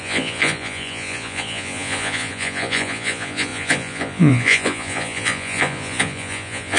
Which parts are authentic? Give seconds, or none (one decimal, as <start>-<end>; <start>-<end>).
none